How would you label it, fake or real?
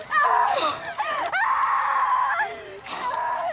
real